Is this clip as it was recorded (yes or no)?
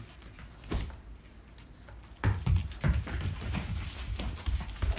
yes